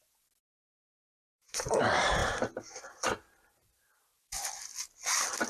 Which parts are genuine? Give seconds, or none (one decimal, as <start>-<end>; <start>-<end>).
0.0-0.5; 1.8-2.2; 4.3-5.5